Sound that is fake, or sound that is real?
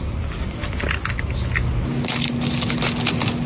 real